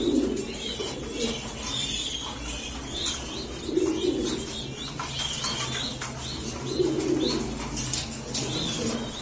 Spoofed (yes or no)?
no